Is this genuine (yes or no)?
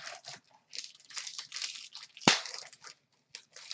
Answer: yes